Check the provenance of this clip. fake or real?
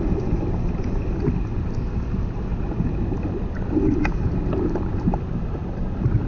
real